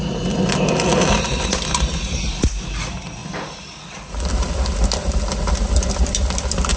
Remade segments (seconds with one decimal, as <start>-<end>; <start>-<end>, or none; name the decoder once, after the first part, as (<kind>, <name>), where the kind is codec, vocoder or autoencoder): 3.2-4.5 (vocoder, BigVGAN v2)

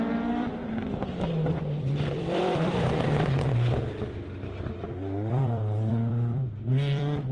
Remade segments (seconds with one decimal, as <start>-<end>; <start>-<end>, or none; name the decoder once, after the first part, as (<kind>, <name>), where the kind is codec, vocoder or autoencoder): 0.0-0.8 (vocoder, BigVGAN v2); 1.8-3.5; 4.6-7.3

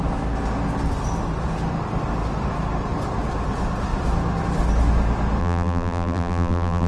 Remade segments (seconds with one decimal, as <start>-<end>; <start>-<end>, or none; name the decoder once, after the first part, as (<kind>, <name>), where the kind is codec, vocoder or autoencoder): 5.4-6.9 (vocoder, BigVGAN v2)

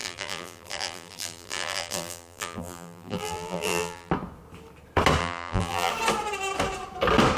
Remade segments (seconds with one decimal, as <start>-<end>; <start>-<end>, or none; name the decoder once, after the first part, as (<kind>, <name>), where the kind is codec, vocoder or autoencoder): 0.0-4.1 (vocoder, BigVGAN v2); 5.2-5.9

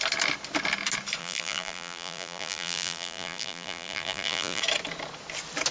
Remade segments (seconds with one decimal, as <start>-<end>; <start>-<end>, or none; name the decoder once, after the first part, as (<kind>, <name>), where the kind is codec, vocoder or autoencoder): 1.2-4.6 (vocoder, BigVGAN v2)

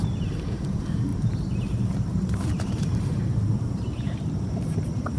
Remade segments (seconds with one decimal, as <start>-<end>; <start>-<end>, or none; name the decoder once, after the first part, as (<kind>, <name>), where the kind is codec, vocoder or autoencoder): 0.0-5.2 (vocoder, BigVGAN v2)

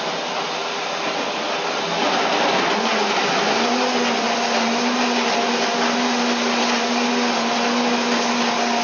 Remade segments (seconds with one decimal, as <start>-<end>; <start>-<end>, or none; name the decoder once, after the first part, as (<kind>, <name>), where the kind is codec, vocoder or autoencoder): none